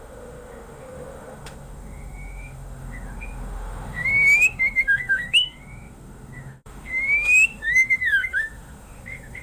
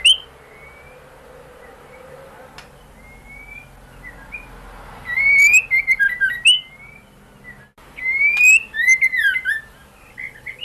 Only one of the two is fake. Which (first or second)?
first